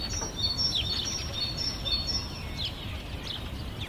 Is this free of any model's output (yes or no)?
yes